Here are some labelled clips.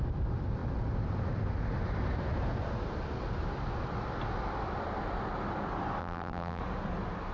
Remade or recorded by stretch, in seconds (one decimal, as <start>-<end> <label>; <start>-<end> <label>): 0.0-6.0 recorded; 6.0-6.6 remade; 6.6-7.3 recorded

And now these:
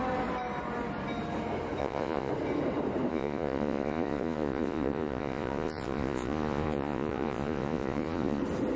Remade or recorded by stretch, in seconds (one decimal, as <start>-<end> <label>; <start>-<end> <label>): 0.0-1.8 recorded; 1.8-2.3 remade; 2.3-3.1 recorded; 3.1-8.4 remade; 8.4-8.8 recorded

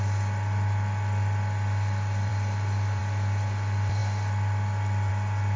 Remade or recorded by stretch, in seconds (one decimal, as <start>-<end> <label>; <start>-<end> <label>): 0.0-5.6 recorded